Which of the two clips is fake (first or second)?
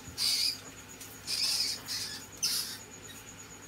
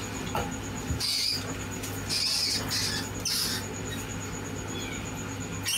first